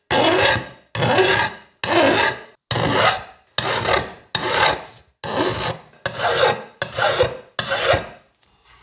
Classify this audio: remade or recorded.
recorded